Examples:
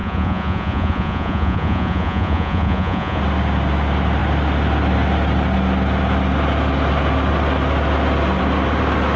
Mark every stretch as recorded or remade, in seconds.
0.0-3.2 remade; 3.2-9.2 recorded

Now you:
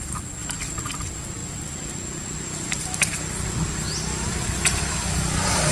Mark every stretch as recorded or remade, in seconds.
0.0-5.7 recorded